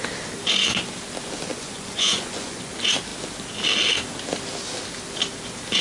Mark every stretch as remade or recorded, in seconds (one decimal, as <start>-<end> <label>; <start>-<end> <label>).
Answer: 0.0-1.5 recorded; 1.5-2.7 remade; 2.7-5.8 recorded